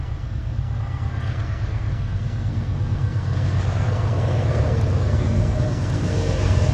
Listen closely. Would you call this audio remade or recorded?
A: remade